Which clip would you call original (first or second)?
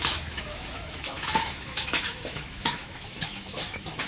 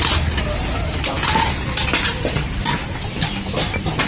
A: second